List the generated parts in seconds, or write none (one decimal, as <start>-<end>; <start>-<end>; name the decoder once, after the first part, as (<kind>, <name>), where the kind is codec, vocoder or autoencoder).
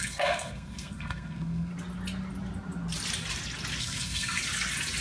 0.0-1.7 (codec, SNAC); 3.8-4.4